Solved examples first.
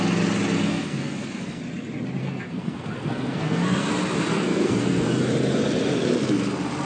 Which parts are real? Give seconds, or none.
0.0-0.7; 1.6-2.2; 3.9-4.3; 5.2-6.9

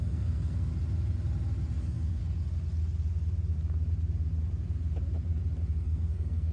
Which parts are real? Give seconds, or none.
0.7-1.8; 2.2-5.7

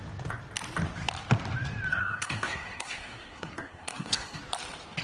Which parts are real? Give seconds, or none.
0.0-1.9; 4.4-5.0

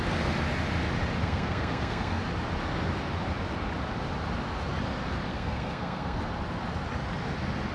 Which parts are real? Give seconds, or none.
0.0-1.2; 2.2-5.3; 6.2-7.7

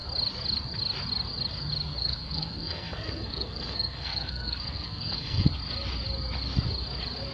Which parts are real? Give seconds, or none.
0.0-2.0; 5.5-7.3

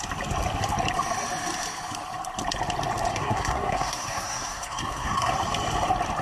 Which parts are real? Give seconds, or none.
0.0-3.1; 5.3-6.2